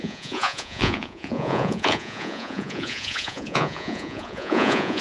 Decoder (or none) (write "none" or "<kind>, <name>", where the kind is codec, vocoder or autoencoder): vocoder, Vocos